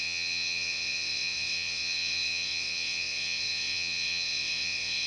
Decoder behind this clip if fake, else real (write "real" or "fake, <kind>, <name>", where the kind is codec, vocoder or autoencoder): fake, vocoder, WaveNeXt